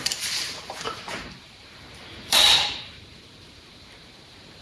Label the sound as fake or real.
fake